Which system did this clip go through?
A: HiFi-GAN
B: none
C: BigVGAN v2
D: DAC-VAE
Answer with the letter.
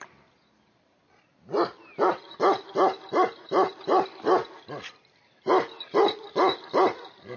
B